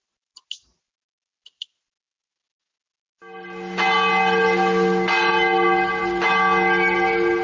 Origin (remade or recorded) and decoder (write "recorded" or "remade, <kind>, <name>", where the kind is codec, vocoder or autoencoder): recorded